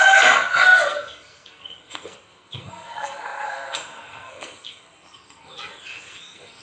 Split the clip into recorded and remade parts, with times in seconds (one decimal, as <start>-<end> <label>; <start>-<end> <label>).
0.0-6.6 remade